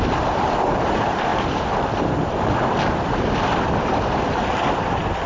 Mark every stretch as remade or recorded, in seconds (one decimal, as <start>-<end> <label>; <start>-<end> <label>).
0.0-5.3 recorded